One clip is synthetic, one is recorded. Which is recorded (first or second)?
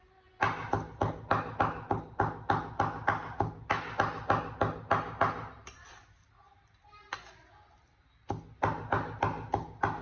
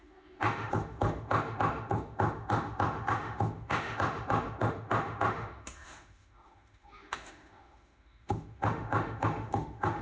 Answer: first